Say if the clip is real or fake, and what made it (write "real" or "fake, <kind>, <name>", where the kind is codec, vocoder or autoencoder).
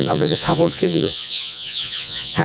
fake, vocoder, Vocos